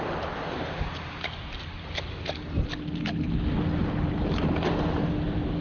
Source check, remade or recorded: recorded